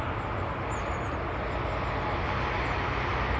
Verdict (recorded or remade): recorded